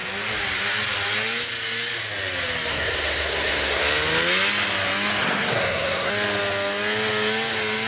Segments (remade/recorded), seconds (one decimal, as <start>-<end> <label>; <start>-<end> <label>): 0.0-2.7 recorded; 2.7-3.8 remade; 3.8-5.2 recorded; 5.2-6.1 remade; 6.1-7.9 recorded